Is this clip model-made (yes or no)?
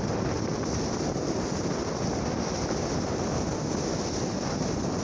no